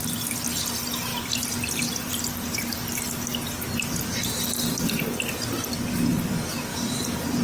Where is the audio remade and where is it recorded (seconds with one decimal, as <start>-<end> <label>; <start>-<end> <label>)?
0.0-1.1 recorded; 1.1-2.3 remade; 2.3-6.7 recorded; 6.7-7.4 remade